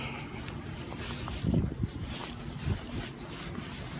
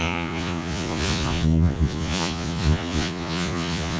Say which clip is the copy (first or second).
second